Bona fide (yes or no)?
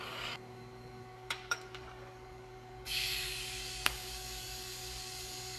no